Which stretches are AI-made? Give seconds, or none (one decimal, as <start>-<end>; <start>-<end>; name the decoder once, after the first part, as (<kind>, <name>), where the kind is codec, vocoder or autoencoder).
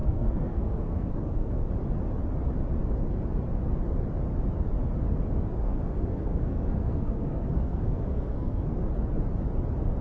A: 0.0-1.7 (codec, SNAC); 5.6-8.9